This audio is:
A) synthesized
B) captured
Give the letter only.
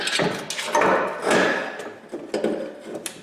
B